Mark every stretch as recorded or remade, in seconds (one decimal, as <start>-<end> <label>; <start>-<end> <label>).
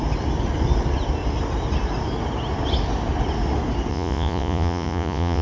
0.0-3.9 recorded; 3.9-5.4 remade